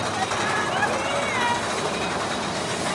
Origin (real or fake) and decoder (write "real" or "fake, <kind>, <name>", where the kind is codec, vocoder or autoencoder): real